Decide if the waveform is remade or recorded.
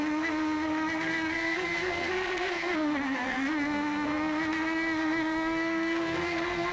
remade